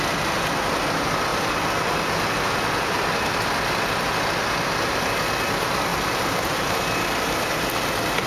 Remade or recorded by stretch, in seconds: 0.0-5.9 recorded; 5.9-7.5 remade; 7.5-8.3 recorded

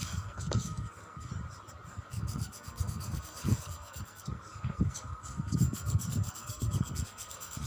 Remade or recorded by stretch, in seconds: 0.0-1.3 remade; 1.3-1.9 recorded; 1.9-7.7 remade

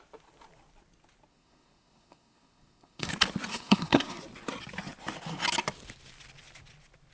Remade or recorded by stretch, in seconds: 0.0-1.3 recorded; 1.3-3.1 remade; 3.1-3.5 recorded; 3.5-4.2 remade; 4.2-7.1 recorded